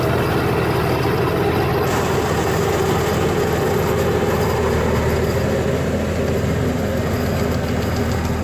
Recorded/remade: recorded